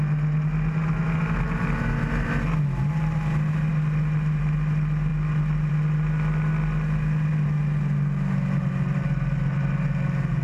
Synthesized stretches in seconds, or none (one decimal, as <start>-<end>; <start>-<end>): none